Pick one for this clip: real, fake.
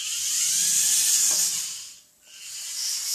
real